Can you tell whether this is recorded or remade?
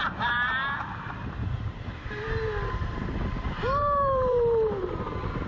remade